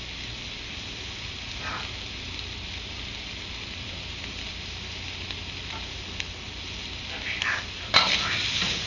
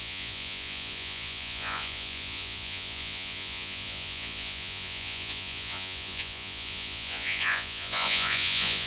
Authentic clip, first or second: first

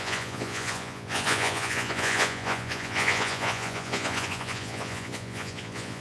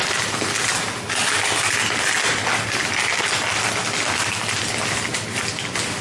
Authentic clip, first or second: second